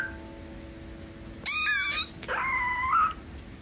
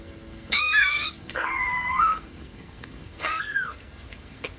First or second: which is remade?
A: second